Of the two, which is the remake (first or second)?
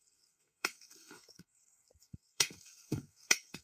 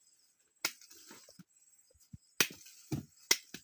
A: first